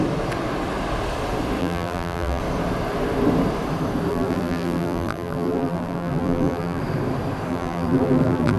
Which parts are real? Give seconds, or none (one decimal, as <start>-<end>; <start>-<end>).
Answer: 0.0-1.6; 2.4-4.1; 6.8-7.5